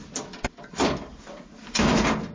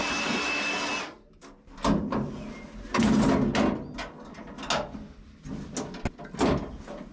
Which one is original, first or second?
second